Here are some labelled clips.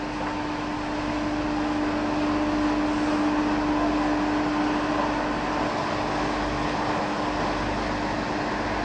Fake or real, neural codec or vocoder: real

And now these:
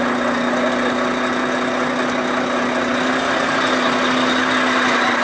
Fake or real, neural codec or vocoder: real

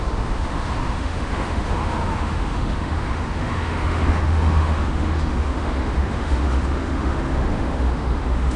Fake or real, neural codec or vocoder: fake, autoencoder, DAC-VAE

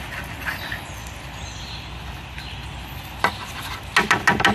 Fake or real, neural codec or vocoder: real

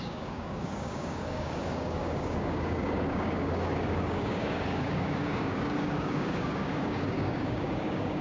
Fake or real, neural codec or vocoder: fake, codec, DAC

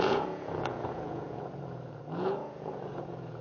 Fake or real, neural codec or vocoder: fake, vocoder, Vocos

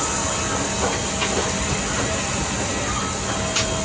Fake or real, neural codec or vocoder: real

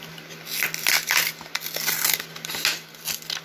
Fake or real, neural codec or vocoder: real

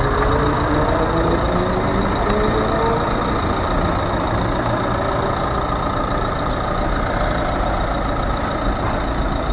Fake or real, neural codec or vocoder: real